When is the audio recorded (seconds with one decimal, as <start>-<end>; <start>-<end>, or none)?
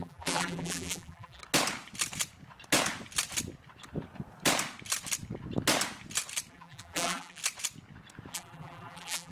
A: 1.4-6.5; 7.4-8.3